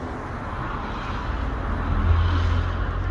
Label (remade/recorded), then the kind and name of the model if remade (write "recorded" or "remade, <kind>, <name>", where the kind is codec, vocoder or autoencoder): recorded